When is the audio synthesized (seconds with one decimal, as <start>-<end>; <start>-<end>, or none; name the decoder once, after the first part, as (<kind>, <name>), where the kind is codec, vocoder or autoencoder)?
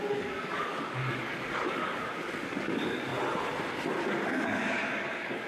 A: 0.0-3.1 (codec, DAC); 4.0-5.5